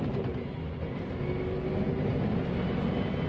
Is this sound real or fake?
real